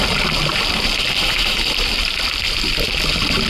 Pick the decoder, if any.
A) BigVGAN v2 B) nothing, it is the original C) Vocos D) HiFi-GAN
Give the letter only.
A